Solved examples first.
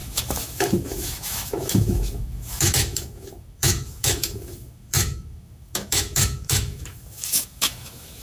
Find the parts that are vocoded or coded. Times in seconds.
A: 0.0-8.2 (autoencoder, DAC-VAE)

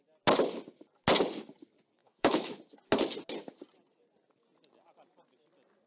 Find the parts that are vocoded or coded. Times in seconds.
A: 2.0-2.6 (autoencoder, DAC-VAE)

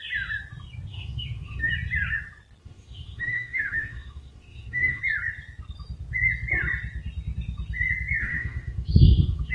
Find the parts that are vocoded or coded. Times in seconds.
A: 0.9-1.7 (autoencoder, DAC-VAE); 2.6-5.0; 8.2-9.5